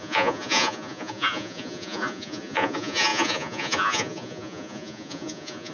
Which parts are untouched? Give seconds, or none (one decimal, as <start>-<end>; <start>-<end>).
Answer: none